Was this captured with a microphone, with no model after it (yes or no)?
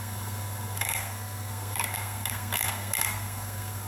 no